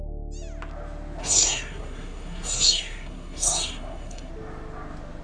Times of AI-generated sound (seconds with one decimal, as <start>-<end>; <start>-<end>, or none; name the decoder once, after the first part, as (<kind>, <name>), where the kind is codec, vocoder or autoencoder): 1.2-4.3 (codec, SNAC)